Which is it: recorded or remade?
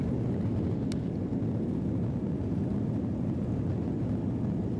recorded